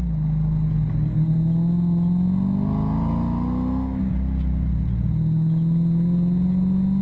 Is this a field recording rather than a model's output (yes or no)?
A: yes